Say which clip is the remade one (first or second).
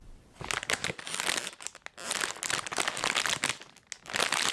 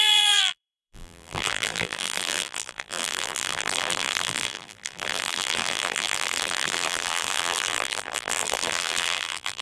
second